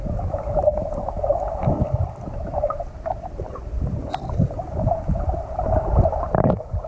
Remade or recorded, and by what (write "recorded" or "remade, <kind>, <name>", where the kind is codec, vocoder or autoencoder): remade, vocoder, BigVGAN v2